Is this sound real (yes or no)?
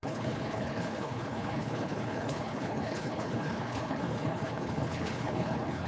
no